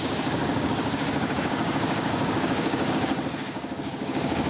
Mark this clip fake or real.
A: fake